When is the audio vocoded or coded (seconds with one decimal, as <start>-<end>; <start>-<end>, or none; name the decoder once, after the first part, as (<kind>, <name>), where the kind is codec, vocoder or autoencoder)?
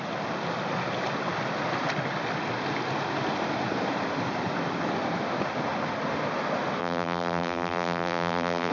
6.8-8.7 (vocoder, BigVGAN v2)